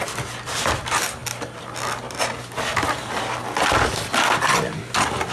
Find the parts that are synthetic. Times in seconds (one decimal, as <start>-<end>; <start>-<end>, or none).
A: none